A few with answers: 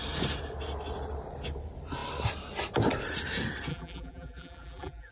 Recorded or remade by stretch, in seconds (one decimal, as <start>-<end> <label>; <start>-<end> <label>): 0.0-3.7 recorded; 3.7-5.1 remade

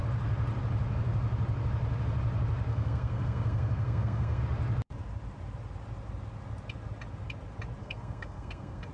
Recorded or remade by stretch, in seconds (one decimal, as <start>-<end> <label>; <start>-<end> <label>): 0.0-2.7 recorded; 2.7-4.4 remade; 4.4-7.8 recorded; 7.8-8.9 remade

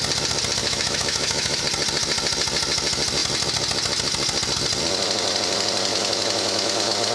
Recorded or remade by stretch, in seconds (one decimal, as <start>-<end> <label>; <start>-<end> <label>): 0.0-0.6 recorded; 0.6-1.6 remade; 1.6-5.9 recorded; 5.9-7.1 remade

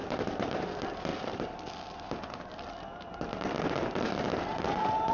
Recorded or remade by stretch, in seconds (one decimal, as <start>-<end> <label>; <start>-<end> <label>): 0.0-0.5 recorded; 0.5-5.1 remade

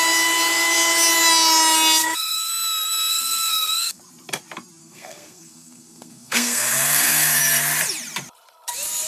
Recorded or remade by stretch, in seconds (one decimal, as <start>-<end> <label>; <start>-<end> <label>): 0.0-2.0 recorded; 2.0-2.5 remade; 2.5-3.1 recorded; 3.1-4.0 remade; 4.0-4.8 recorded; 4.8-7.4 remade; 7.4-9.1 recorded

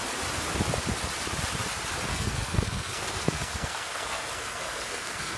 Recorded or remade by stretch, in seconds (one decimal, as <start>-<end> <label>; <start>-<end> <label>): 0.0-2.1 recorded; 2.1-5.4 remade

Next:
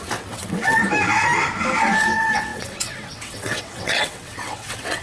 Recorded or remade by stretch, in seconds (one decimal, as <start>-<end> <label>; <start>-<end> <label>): 0.0-0.8 remade; 0.8-2.0 recorded; 2.0-5.0 remade